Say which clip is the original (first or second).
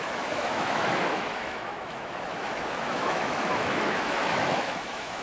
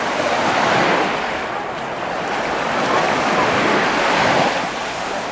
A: second